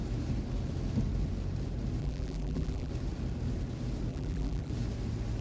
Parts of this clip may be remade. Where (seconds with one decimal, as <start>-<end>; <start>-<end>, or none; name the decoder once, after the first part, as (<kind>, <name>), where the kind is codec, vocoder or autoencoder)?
2.0-2.9 (vocoder, BigVGAN v2); 4.1-4.7